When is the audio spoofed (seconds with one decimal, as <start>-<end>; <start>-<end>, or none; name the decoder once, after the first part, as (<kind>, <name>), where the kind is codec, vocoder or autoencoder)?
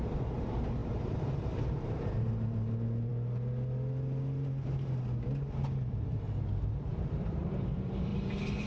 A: 0.0-3.1 (vocoder, BigVGAN v2); 5.9-8.1